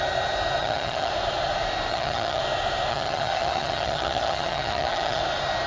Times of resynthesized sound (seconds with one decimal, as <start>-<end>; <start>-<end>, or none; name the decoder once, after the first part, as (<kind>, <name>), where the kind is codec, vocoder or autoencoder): 0.6-1.1 (vocoder, HiFi-GAN); 1.9-2.4; 2.9-5.2